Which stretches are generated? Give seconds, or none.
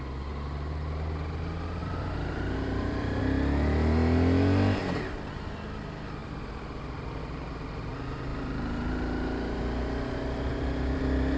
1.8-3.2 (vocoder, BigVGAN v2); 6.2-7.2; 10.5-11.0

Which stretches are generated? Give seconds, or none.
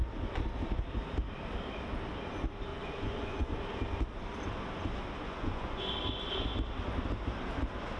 2.7-3.5 (vocoder, Vocos); 5.2-5.9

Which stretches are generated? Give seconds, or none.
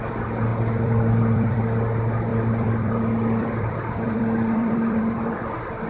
0.5-1.6 (vocoder, BigVGAN v2); 2.3-5.9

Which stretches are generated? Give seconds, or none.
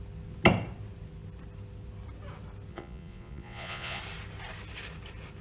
2.7-4.0 (vocoder, Vocos)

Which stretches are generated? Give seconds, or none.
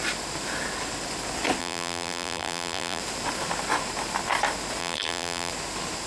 1.6-3.0 (vocoder, BigVGAN v2); 4.8-5.5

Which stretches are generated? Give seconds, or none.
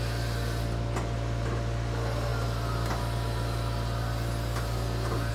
none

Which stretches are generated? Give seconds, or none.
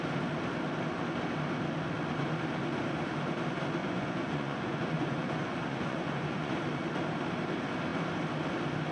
3.8-6.6 (vocoder, Vocos)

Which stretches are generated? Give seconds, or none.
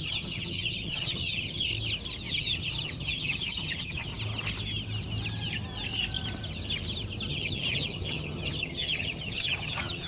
0.0-1.7 (vocoder, HiFi-GAN); 2.3-4.1; 7.3-10.1